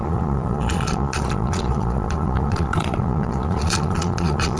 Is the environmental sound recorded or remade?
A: remade